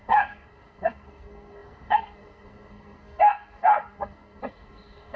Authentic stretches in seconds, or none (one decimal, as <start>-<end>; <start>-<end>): none